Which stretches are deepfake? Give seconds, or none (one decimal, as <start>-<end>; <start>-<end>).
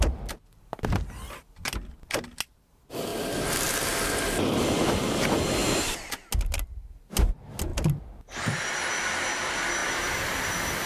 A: 5.6-6.3; 9.8-10.5